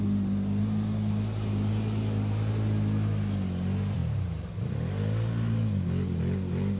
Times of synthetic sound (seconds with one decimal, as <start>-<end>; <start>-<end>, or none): none